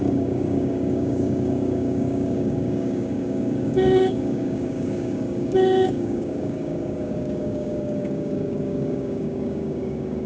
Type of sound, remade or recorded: remade